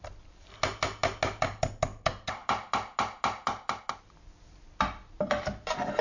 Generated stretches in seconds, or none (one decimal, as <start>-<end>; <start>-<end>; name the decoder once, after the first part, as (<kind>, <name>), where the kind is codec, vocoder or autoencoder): none